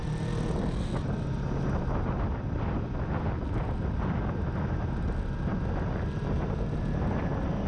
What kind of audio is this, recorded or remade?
recorded